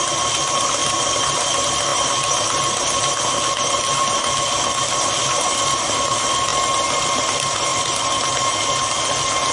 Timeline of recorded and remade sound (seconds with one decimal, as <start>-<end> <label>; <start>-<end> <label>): 0.0-0.8 recorded; 0.8-1.4 remade; 1.4-7.7 recorded; 7.7-8.2 remade; 8.2-9.5 recorded

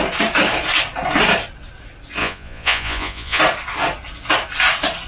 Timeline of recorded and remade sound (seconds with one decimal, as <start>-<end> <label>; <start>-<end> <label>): 0.0-2.2 recorded; 2.2-3.4 remade; 3.4-5.1 recorded

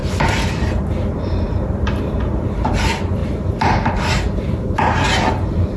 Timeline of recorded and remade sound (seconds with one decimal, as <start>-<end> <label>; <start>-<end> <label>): 0.0-2.8 remade; 2.8-3.2 recorded; 3.2-5.8 remade

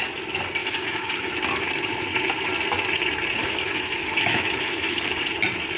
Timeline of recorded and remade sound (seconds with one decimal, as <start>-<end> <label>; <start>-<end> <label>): 0.0-0.6 recorded; 0.6-1.3 remade; 1.3-3.4 recorded; 3.4-5.0 remade; 5.0-5.8 recorded

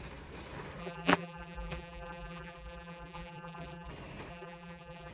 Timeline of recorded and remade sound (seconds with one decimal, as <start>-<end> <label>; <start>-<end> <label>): 0.0-0.8 recorded; 0.8-3.9 remade; 3.9-4.3 recorded; 4.3-5.1 remade

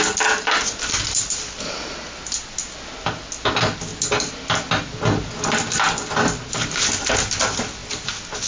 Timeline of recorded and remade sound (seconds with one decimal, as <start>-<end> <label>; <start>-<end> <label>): 0.0-8.5 recorded

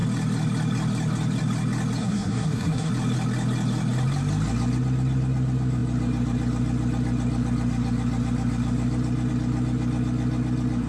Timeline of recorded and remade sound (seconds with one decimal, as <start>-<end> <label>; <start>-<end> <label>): 0.0-2.0 recorded; 2.0-2.9 remade; 2.9-10.9 recorded